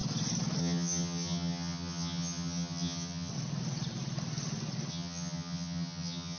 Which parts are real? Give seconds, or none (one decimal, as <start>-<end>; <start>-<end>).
0.0-0.6; 3.3-4.9